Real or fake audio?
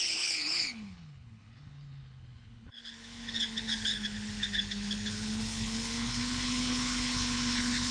fake